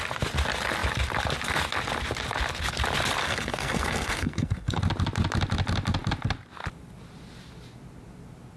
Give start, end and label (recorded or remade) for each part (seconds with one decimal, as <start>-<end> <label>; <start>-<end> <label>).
0.0-3.2 recorded; 3.2-4.8 remade; 4.8-8.6 recorded